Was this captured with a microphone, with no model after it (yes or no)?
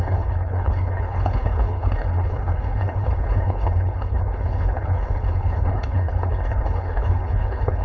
no